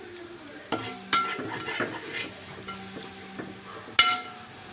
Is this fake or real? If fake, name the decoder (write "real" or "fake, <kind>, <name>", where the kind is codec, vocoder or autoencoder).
real